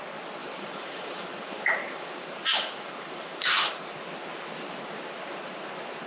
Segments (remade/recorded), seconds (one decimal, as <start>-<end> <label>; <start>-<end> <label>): 0.0-0.4 recorded; 0.4-3.8 remade; 3.8-6.1 recorded